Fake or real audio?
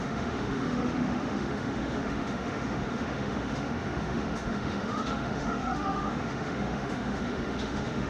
fake